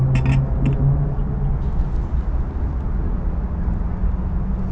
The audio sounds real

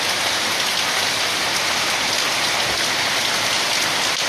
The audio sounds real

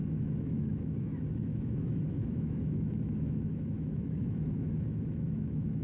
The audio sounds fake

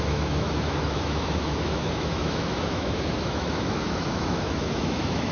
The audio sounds fake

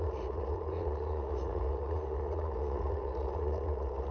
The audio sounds fake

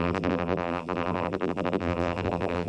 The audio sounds fake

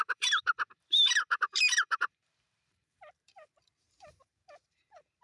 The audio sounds fake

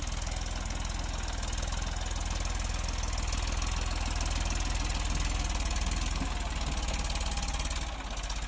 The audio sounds real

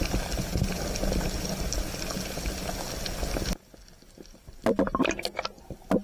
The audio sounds real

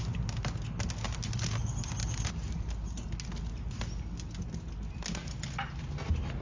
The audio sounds real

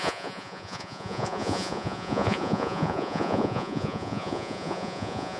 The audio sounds fake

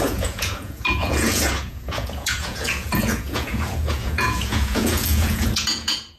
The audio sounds fake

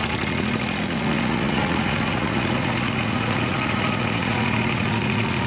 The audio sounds fake